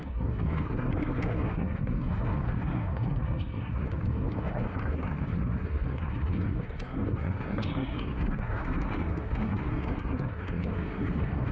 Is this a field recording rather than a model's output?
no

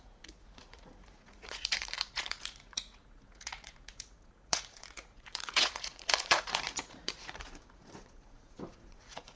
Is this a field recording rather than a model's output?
no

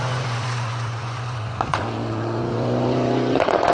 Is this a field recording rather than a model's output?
no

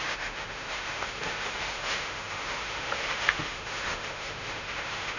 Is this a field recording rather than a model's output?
no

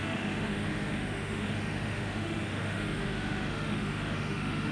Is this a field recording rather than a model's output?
no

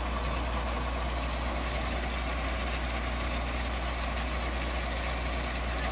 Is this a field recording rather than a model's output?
yes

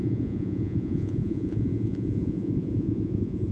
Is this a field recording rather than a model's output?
no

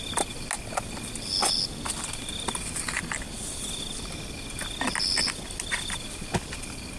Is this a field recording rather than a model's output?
yes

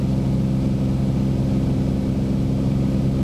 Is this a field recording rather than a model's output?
yes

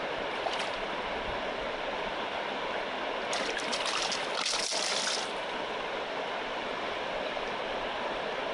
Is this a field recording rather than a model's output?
yes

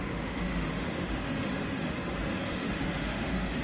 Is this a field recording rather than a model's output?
no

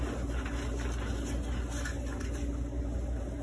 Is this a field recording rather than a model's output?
yes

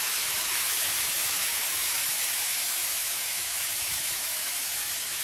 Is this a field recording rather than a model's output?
no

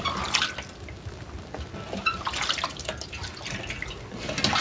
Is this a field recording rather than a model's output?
yes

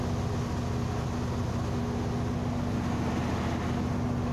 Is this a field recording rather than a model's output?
yes